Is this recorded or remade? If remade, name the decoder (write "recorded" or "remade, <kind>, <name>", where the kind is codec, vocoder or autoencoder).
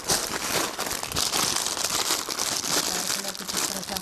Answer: recorded